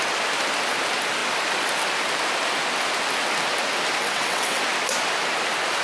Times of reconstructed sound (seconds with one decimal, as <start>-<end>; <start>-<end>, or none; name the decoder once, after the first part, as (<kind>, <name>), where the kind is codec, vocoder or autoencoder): 4.0-4.6 (vocoder, WaveNeXt)